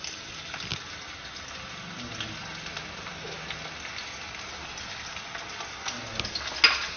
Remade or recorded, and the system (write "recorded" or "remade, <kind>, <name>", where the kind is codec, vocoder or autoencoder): recorded